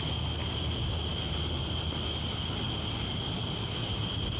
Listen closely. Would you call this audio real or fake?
real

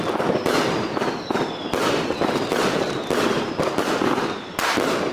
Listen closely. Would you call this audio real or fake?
real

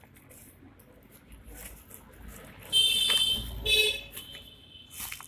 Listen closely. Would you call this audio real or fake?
real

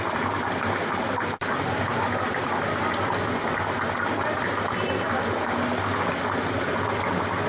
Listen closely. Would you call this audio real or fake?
real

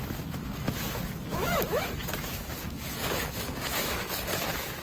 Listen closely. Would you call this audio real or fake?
fake